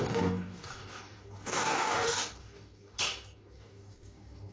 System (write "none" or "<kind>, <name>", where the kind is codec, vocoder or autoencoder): codec, DAC